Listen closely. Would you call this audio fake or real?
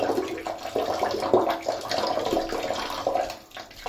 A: real